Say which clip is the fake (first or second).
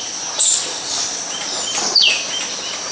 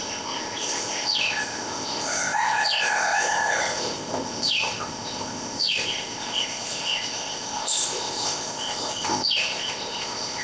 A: second